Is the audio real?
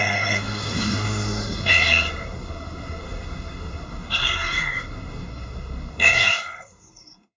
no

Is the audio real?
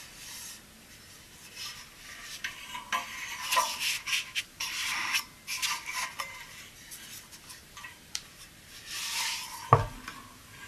no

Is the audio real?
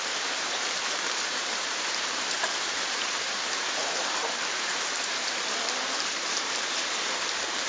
no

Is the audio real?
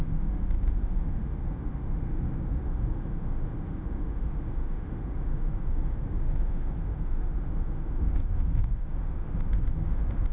no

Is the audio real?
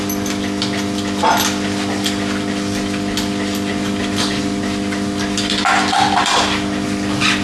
yes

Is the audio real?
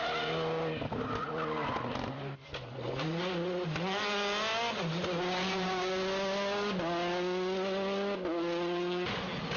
yes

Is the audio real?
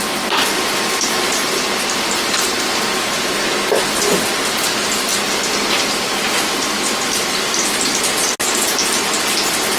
yes